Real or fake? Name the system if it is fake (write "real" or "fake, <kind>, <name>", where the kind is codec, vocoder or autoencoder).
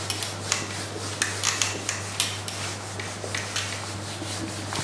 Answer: real